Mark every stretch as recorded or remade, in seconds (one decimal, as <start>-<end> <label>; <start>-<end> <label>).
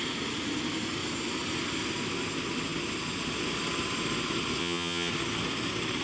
0.0-4.6 recorded; 4.6-5.1 remade; 5.1-6.0 recorded